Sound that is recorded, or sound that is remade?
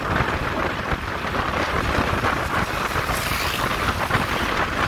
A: remade